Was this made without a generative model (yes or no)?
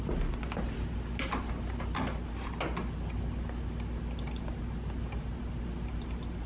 yes